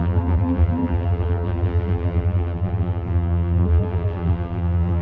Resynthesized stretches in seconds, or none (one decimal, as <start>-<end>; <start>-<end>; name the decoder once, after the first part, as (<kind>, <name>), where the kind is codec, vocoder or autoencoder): 0.0-5.0 (vocoder, BigVGAN v2)